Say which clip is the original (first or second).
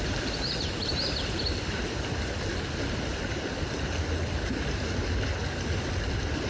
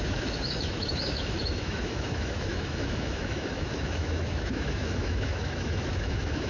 first